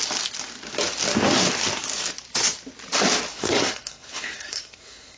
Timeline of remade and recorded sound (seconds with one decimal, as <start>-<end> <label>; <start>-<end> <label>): 0.0-3.3 recorded; 3.3-5.2 remade